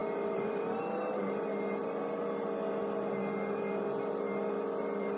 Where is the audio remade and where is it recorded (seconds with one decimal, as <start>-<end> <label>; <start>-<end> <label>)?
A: 0.0-5.2 recorded